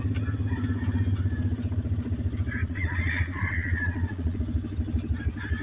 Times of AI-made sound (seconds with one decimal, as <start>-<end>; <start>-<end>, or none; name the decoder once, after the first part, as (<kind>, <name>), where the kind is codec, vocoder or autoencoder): 2.6-4.4 (vocoder, Vocos)